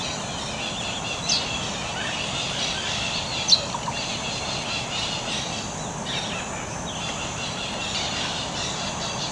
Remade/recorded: recorded